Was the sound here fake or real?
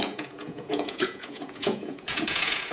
fake